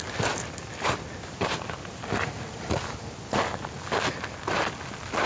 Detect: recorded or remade recorded